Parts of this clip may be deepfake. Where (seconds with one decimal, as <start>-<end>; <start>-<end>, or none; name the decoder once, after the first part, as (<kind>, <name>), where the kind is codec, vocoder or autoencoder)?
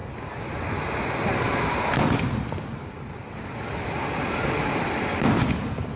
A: none